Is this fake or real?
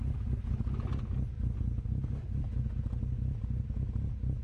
real